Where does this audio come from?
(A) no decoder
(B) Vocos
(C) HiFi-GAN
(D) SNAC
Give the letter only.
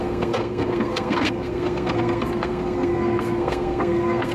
D